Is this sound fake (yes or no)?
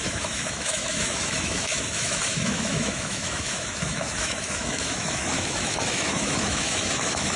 yes